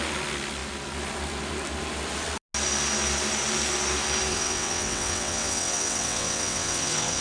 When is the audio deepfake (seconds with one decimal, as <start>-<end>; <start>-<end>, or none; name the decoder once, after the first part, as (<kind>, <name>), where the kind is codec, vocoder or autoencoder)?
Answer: 4.3-7.2 (vocoder, WaveNeXt)